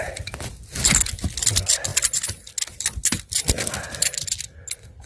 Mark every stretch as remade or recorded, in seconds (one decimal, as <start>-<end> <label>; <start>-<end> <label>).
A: 0.0-5.1 recorded